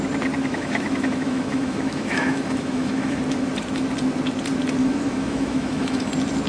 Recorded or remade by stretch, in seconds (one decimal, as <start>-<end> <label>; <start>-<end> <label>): 0.0-0.4 recorded; 0.4-3.2 remade; 3.2-4.8 recorded; 4.8-6.1 remade; 6.1-6.5 recorded